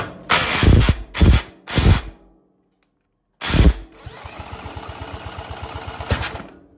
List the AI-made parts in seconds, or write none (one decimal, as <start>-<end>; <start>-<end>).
none